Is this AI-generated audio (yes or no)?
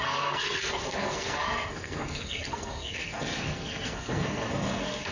yes